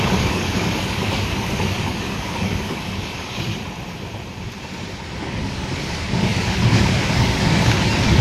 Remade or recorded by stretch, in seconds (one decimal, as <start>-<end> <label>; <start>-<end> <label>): 0.0-3.5 remade; 3.5-5.2 recorded; 5.2-8.2 remade